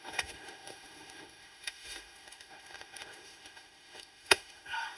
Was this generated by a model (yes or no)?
yes